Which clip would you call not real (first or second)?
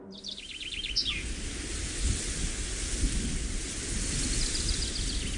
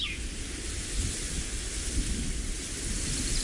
second